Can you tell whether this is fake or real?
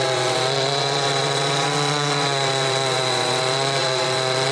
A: fake